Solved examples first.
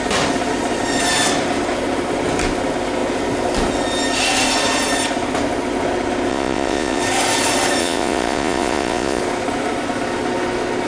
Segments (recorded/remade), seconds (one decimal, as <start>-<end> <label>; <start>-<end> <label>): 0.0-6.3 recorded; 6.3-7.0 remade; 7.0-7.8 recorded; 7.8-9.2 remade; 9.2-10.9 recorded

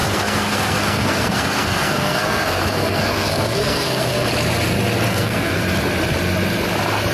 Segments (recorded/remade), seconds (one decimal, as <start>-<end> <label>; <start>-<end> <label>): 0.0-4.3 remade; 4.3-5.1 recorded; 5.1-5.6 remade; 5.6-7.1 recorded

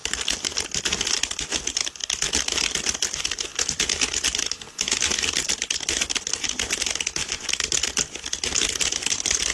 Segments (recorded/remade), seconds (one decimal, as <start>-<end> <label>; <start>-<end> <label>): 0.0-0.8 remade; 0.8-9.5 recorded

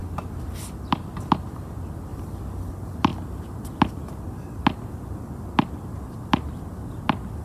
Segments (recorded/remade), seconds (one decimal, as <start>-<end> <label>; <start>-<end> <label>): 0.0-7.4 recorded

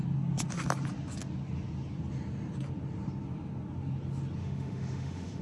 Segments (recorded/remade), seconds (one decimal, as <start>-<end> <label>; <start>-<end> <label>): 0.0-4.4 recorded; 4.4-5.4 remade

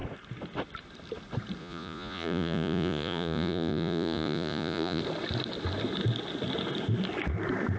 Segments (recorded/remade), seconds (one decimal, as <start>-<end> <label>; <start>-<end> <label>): 0.0-1.6 recorded; 1.6-5.0 remade; 5.0-7.8 recorded